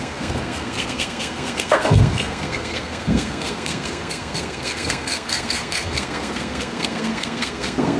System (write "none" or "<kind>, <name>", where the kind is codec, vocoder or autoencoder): codec, SNAC